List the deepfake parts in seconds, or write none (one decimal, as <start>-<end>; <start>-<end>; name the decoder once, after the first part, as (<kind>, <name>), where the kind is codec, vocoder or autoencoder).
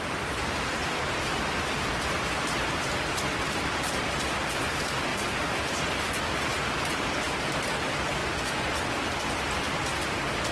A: 8.2-8.7 (vocoder, Vocos)